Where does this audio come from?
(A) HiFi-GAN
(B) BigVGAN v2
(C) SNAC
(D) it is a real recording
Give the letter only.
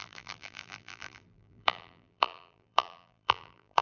B